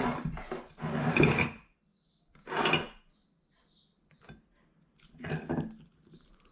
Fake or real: real